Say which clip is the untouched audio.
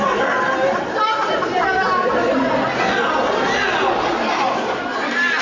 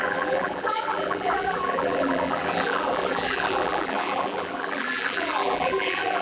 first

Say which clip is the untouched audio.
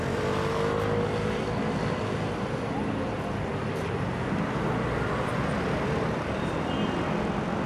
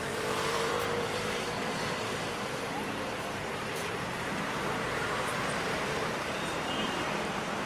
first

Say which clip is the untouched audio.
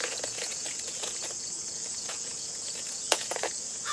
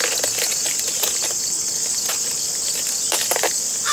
second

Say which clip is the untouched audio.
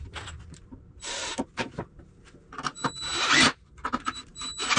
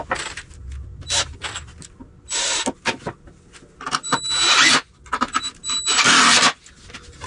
second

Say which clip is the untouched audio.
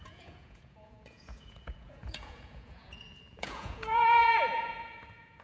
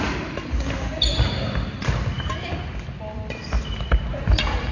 second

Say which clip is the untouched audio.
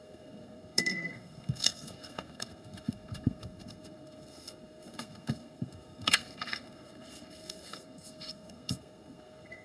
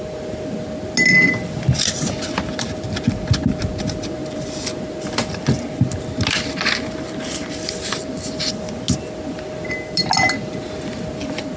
second